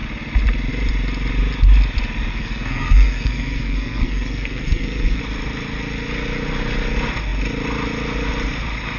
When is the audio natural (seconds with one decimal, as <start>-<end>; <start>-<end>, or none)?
0.0-2.3; 5.2-9.0

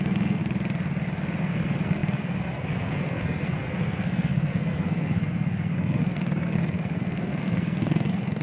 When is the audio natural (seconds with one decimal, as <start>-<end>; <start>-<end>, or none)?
0.4-1.4

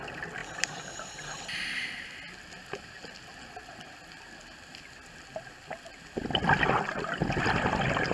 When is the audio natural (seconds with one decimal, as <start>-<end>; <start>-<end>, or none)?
0.0-8.1

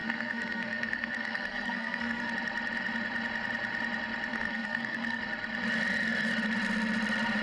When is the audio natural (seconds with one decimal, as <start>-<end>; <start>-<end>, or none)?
2.3-4.3; 5.2-7.4

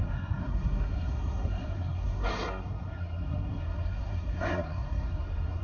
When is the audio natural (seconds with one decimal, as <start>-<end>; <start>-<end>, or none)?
none

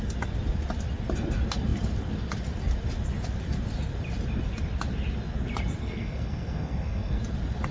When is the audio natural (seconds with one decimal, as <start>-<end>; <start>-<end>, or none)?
0.0-5.8; 7.2-7.7